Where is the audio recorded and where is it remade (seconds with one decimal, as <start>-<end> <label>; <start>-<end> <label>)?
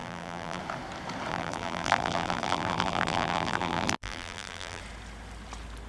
0.0-0.6 remade; 0.6-1.3 recorded; 1.3-4.8 remade; 4.8-5.9 recorded